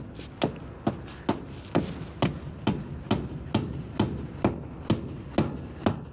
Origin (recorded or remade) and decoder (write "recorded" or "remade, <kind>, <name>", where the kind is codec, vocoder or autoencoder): recorded